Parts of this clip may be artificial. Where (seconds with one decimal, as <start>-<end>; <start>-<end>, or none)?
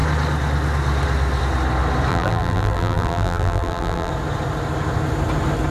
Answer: 2.1-4.1